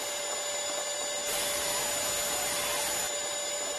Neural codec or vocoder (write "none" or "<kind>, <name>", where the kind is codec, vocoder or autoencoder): none